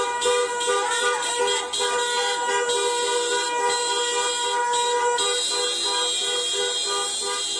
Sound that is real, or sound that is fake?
real